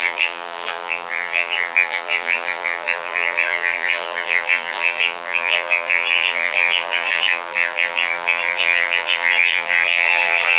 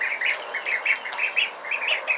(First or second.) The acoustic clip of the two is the second